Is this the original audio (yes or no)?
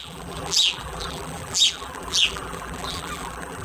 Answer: no